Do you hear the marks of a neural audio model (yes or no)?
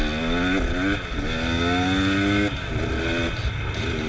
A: no